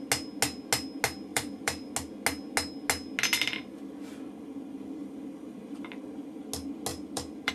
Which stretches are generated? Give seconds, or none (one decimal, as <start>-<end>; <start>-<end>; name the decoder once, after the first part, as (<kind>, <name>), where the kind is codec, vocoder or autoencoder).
1.3-1.9 (vocoder, BigVGAN v2); 5.0-6.4; 6.9-7.5